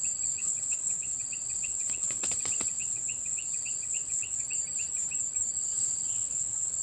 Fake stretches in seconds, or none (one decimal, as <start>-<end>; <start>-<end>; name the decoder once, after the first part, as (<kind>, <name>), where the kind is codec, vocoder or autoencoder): 0.4-4.5 (vocoder, WaveNeXt); 5.6-6.8